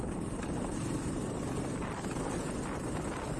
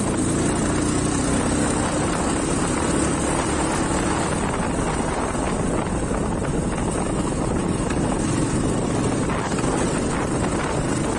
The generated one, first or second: first